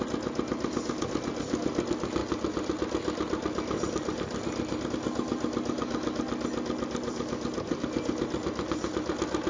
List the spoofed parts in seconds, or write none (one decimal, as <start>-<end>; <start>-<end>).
none